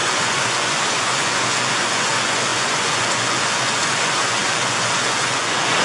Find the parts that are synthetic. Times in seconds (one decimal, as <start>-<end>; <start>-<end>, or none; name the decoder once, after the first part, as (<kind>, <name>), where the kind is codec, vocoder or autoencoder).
0.0-5.8 (vocoder, Vocos)